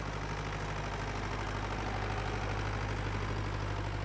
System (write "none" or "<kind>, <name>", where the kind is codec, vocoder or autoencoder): none